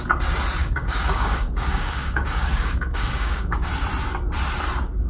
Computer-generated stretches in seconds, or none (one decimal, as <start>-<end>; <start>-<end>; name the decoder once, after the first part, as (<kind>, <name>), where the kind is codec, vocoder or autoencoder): 0.6-3.7 (codec, DAC)